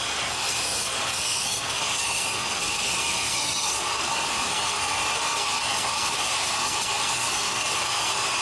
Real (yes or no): no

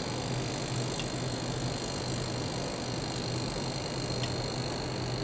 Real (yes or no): yes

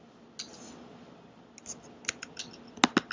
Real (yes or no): yes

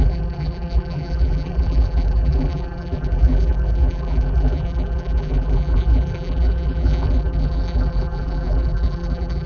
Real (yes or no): no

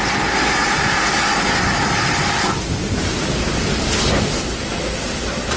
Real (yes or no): yes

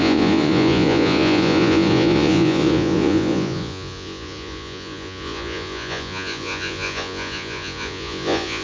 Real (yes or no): no